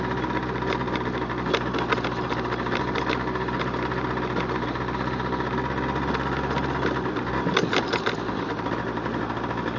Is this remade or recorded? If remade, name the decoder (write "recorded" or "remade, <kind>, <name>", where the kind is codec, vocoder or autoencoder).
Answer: recorded